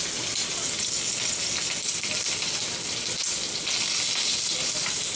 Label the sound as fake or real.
real